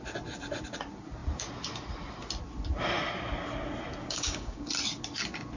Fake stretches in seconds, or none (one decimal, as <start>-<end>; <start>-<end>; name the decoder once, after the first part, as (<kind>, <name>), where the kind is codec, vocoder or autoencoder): 4.0-4.7 (codec, DAC)